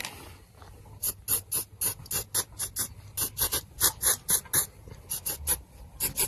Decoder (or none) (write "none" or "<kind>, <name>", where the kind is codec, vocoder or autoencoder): none